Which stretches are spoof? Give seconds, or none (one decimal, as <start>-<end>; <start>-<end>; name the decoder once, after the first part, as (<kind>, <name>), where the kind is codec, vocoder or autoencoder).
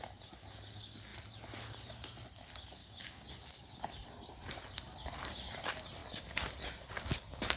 2.8-3.3 (codec, DAC)